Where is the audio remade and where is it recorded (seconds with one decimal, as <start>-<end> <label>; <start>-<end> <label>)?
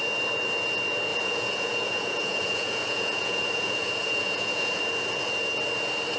0.0-1.1 recorded; 1.1-4.8 remade; 4.8-6.2 recorded